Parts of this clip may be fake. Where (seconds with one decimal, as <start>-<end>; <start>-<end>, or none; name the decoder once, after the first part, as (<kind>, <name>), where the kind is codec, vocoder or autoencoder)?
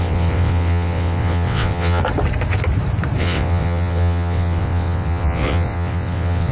0.0-2.0 (vocoder, WaveNeXt); 3.2-6.5